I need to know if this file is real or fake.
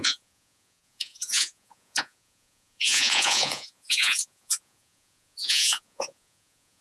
fake